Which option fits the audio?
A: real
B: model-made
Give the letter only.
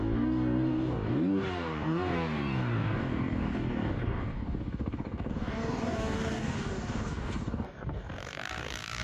B